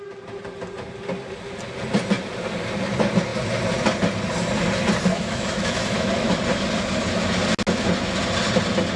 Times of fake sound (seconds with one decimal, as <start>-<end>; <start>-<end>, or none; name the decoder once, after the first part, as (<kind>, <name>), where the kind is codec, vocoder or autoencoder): 5.1-6.4 (autoencoder, DAC-VAE)